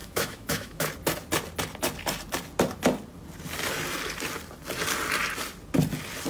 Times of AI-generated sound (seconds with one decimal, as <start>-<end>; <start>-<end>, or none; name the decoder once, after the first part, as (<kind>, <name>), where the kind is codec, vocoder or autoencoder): 0.0-0.9 (autoencoder, DAC-VAE)